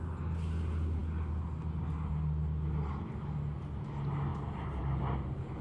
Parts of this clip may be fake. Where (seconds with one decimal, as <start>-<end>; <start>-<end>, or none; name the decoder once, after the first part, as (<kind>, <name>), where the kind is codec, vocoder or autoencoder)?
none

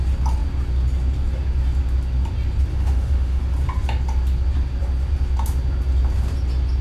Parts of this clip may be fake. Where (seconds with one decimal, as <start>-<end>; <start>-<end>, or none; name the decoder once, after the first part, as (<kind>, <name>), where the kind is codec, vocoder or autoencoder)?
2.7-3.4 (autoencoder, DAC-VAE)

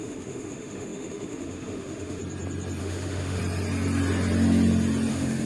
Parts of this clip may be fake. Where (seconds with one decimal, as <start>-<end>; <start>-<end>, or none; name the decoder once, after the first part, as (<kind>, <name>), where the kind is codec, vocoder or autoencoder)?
0.0-2.2 (autoencoder, DAC-VAE); 2.8-3.4; 5.1-5.5